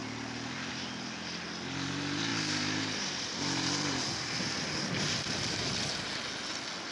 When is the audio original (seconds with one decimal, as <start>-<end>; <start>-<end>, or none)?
0.0-2.3; 4.9-6.9